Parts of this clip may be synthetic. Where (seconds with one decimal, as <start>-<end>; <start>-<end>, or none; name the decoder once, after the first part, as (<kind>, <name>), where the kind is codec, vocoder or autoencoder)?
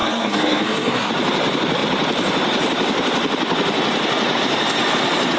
0.0-1.1 (codec, SNAC)